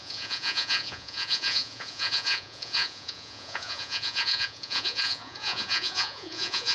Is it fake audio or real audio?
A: fake